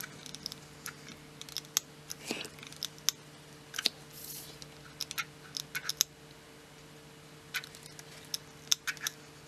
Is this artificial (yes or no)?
no